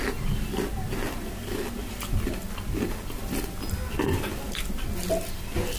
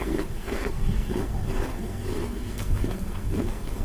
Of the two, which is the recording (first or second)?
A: first